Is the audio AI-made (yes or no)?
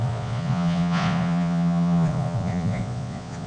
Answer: yes